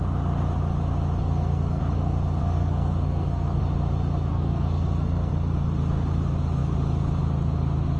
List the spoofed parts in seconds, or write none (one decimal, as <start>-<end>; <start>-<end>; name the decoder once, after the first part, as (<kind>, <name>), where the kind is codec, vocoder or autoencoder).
1.2-1.8 (codec, SNAC); 2.4-3.6; 4.3-5.3